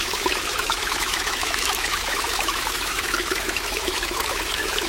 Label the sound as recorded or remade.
remade